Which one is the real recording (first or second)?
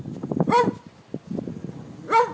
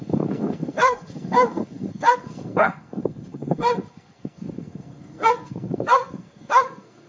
first